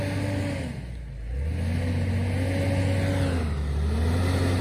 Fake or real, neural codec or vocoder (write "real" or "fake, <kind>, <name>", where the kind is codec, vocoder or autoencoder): real